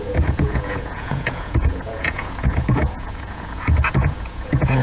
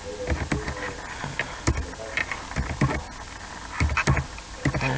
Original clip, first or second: second